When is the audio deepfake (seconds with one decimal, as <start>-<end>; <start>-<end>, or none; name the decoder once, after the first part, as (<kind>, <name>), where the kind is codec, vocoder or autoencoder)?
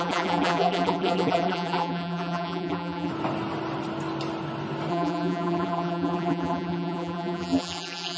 0.0-3.1 (vocoder, BigVGAN v2); 4.9-8.2